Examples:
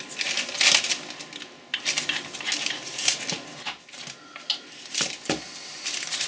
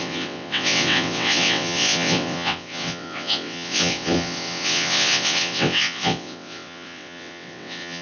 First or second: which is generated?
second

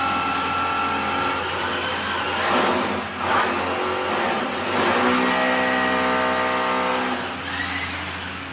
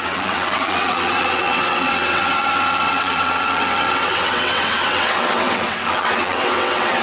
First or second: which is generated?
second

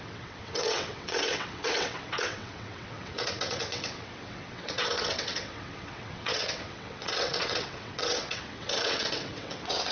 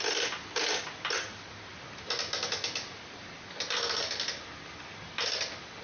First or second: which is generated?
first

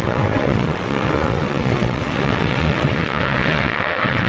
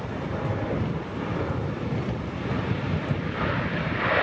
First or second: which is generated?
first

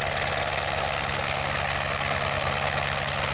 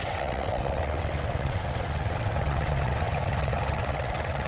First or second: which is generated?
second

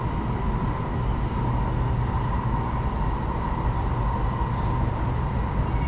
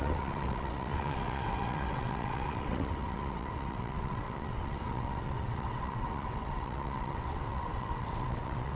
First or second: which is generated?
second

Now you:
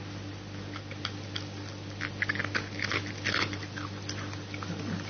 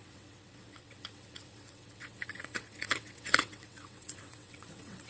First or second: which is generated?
second